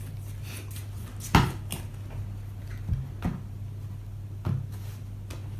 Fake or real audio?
real